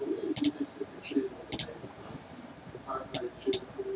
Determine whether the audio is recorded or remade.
recorded